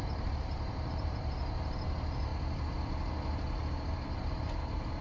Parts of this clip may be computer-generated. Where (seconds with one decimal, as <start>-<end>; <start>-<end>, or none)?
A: 0.0-2.3; 3.7-5.0